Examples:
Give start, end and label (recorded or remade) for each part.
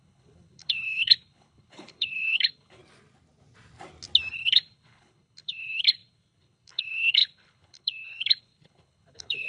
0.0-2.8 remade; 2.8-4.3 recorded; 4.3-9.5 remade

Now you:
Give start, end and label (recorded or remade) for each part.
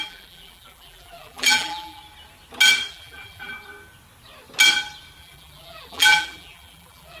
0.0-2.0 remade; 2.0-2.9 recorded; 2.9-3.5 remade; 3.5-5.2 recorded; 5.2-7.2 remade